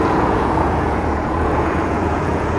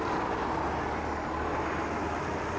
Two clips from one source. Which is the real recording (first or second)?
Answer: second